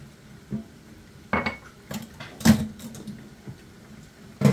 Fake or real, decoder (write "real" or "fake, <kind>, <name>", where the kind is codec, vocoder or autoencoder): real